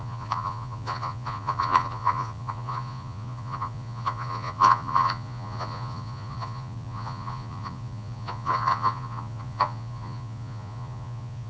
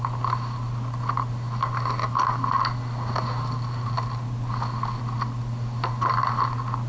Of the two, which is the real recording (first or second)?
second